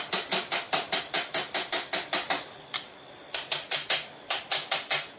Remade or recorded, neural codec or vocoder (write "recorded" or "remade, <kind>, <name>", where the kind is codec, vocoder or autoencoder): recorded